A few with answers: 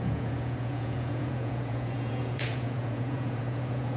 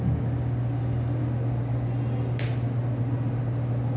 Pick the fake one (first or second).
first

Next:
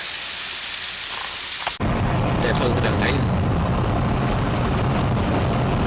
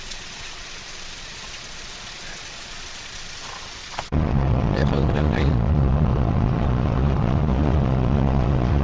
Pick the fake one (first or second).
second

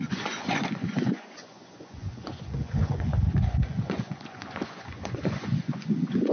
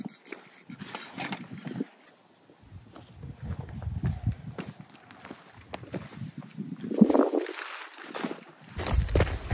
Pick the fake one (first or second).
first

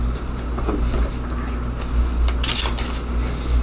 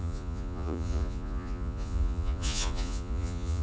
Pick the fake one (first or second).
second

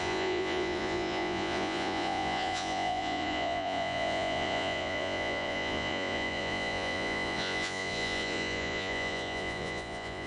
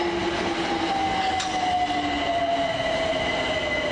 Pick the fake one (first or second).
first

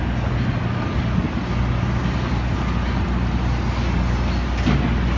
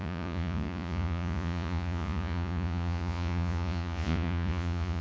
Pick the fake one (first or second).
second